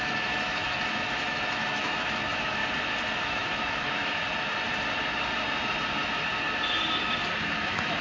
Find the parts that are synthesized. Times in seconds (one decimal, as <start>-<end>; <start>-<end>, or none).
0.0-2.6; 3.2-4.2; 7.4-8.0